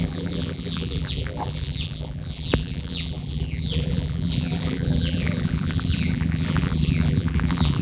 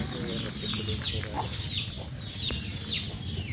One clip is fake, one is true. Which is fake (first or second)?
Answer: first